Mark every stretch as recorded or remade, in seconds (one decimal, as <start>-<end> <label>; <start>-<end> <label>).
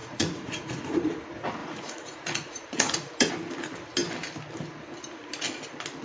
0.0-1.1 remade; 1.1-1.6 recorded; 1.6-3.3 remade; 3.3-6.0 recorded